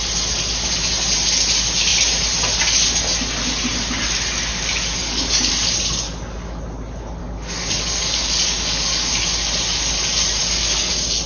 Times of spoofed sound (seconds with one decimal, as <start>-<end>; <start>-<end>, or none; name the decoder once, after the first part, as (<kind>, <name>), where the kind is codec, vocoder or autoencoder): 4.5-5.5 (codec, DAC); 7.2-9.1; 10.4-10.9